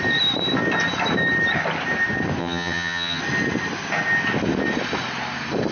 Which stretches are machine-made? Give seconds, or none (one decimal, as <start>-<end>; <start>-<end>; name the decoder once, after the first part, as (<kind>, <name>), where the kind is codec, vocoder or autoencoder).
2.4-3.2 (vocoder, HiFi-GAN)